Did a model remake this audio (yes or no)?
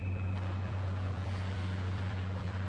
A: yes